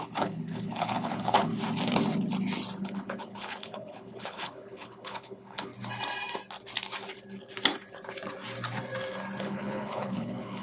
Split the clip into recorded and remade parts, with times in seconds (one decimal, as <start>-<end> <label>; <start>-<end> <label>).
0.0-1.5 remade; 1.5-2.8 recorded; 2.8-5.7 remade; 5.7-9.4 recorded; 9.4-10.6 remade